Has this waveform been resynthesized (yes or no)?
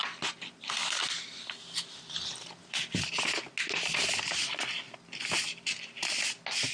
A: no